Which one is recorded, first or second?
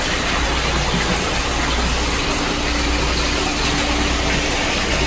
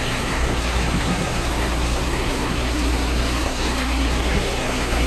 first